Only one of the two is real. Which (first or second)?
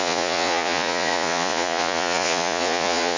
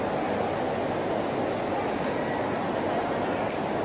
second